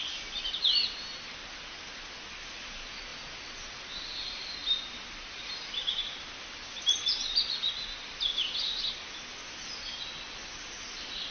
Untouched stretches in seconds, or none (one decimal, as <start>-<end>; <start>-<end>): 0.0-11.3